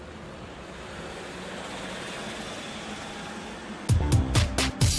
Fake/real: real